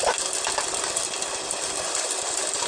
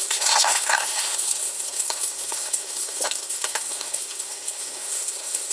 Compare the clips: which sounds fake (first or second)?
second